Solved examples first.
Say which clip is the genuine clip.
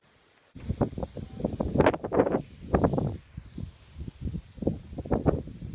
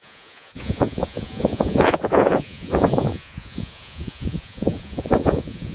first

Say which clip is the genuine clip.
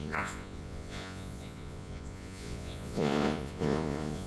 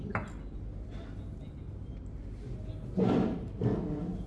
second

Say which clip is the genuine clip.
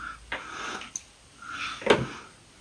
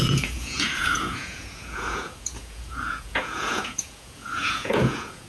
first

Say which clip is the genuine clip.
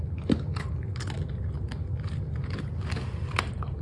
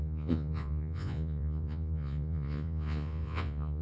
first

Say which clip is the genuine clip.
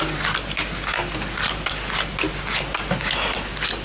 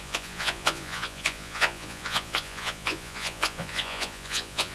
first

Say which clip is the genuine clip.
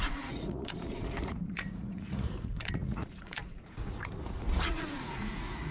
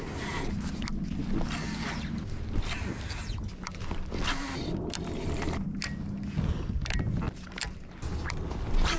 second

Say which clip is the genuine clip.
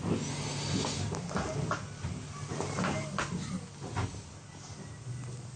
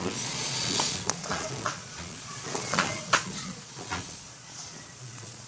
first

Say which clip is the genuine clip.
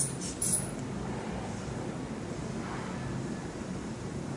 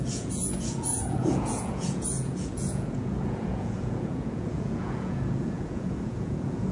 first